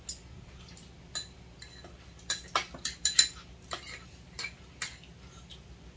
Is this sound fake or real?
real